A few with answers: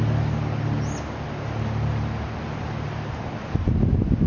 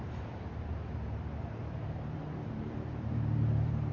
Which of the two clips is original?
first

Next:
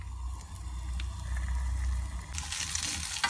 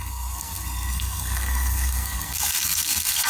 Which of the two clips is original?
first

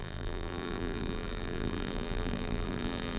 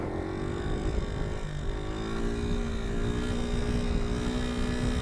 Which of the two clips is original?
second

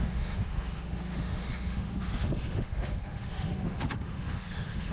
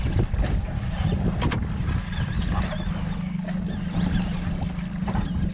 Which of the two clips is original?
second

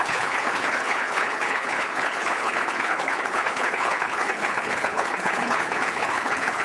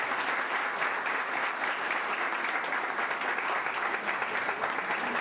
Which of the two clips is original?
second